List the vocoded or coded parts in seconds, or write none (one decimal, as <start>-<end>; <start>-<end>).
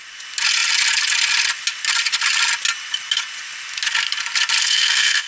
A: 4.6-5.3